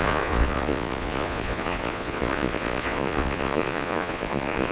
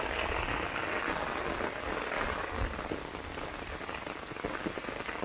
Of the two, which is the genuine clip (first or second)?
second